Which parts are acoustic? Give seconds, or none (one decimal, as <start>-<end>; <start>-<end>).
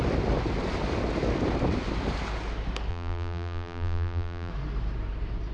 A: 0.0-2.9; 4.5-5.5